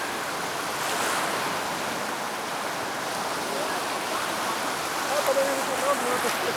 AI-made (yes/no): no